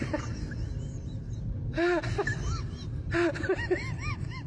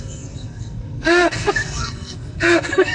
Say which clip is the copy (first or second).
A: second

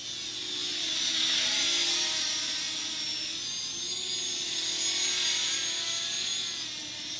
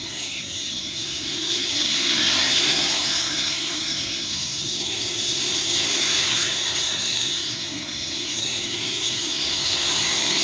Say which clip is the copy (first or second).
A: second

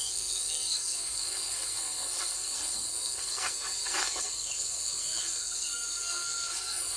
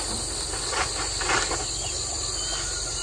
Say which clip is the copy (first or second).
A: first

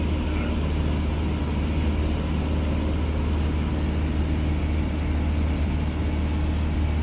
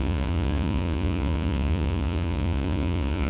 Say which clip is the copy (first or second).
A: second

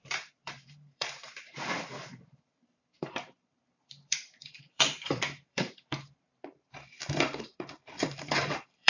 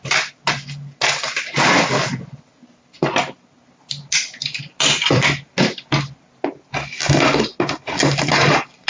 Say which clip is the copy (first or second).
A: first